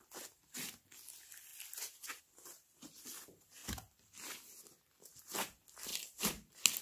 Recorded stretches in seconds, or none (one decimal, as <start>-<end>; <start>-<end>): 0.0-3.6; 5.2-6.8